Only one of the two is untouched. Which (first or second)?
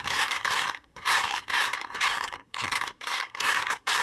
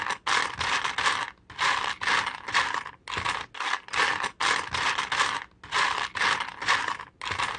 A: second